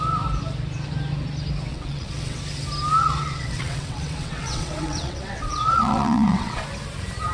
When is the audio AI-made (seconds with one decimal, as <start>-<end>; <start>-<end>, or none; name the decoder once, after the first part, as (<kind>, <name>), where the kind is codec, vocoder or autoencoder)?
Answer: 1.7-2.4 (vocoder, WaveNeXt); 3.0-6.6